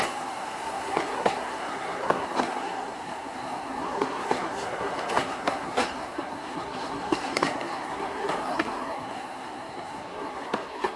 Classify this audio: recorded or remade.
remade